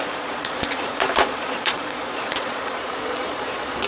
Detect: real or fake fake